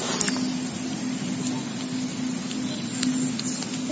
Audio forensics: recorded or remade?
recorded